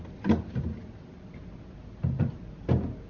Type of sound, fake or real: real